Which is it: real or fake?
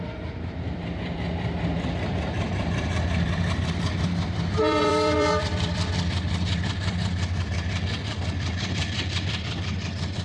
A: fake